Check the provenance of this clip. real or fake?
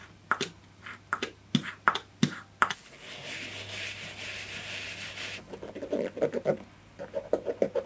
real